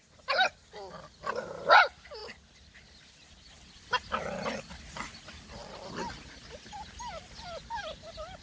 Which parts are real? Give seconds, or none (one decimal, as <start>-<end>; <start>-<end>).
0.0-8.4